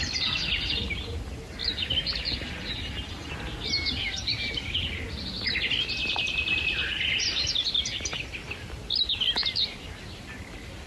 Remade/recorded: recorded